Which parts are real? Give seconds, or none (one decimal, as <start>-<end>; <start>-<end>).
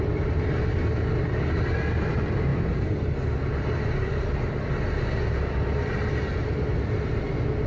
0.0-7.7